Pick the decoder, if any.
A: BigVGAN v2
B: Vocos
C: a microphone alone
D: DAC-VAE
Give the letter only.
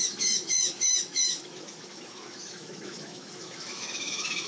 D